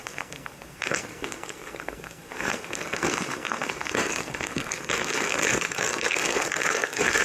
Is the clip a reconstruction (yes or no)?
yes